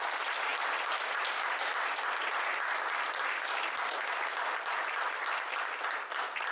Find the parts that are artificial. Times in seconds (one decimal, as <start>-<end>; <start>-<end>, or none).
none